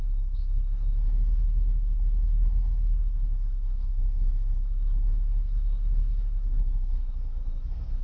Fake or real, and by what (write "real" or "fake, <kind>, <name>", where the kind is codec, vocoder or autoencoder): fake, codec, SNAC